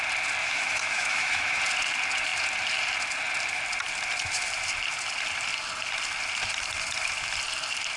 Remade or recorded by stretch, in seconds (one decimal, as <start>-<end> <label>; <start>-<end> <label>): 0.0-0.4 recorded; 0.4-1.6 remade; 1.6-8.0 recorded